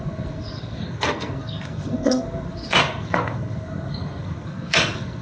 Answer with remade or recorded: remade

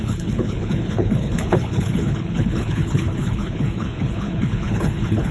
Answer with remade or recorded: remade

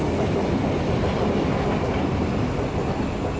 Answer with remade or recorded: recorded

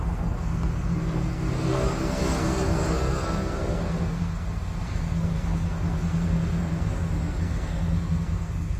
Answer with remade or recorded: remade